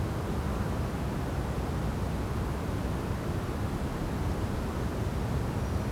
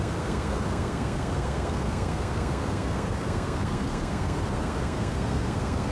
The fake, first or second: second